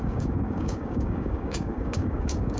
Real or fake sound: fake